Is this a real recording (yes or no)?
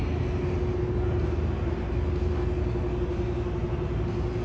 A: yes